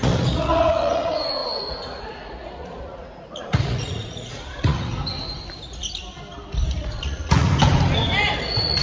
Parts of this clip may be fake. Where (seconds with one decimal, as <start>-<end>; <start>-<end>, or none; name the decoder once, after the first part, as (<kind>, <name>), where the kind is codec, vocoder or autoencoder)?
0.0-4.9 (vocoder, Vocos); 6.7-7.5; 8.4-8.8